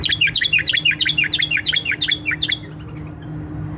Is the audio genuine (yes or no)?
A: yes